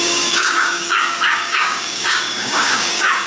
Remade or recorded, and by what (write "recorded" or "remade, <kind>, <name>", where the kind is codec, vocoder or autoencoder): remade, codec, DAC